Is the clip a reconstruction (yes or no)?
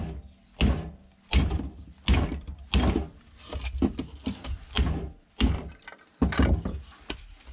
no